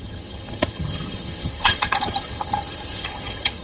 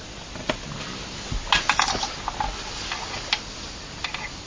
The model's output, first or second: first